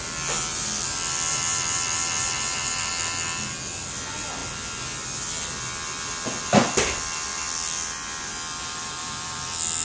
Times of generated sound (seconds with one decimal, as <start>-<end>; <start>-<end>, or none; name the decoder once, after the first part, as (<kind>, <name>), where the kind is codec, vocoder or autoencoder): 0.5-2.9 (vocoder, BigVGAN v2); 7.3-8.3